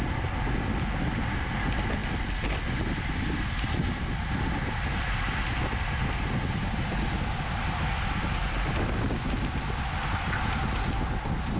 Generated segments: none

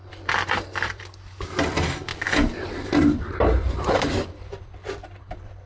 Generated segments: 0.0-1.0 (vocoder, BigVGAN v2); 2.1-5.7

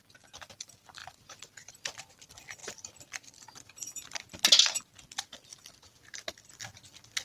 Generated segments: 0.0-7.2 (vocoder, BigVGAN v2)

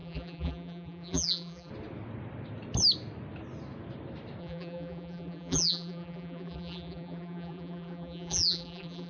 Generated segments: 0.0-1.7 (vocoder, BigVGAN v2); 4.4-9.1